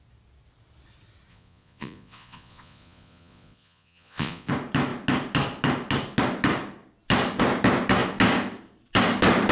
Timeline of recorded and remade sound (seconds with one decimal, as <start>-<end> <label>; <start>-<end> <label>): 0.0-1.3 recorded; 1.3-4.5 remade; 4.5-9.5 recorded